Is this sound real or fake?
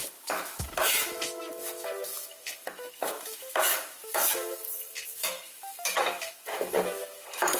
fake